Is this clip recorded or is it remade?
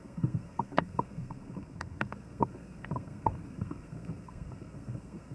remade